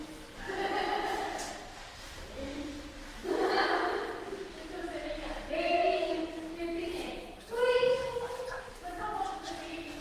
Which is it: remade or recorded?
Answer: recorded